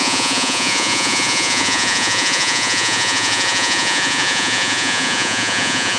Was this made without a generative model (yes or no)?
no